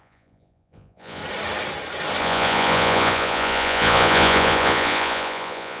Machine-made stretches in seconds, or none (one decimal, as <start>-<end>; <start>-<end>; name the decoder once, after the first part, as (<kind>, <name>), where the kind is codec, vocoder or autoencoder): 0.0-1.2 (vocoder, Vocos); 2.2-5.8